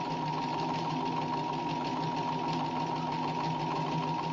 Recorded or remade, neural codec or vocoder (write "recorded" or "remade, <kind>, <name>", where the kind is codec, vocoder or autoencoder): recorded